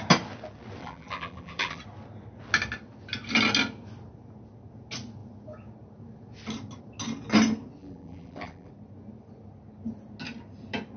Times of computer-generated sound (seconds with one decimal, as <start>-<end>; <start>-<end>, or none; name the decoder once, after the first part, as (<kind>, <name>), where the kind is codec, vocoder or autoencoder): 0.8-1.8 (vocoder, BigVGAN v2); 7.8-8.7